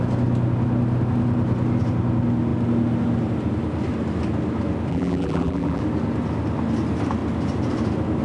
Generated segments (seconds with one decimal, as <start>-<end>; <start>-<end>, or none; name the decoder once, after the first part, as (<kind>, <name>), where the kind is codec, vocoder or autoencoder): 4.9-5.8 (vocoder, BigVGAN v2)